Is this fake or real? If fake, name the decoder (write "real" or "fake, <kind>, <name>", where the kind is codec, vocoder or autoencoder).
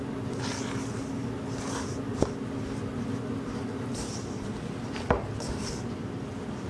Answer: real